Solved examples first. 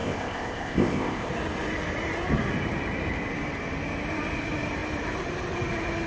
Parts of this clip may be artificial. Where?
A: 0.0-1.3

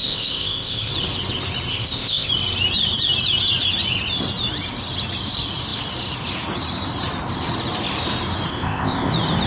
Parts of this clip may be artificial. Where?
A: 0.0-0.9; 1.7-2.3; 8.5-9.1

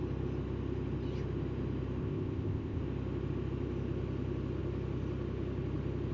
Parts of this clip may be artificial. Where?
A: 2.0-2.8

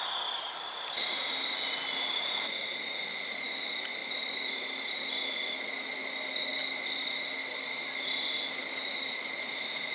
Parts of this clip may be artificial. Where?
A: none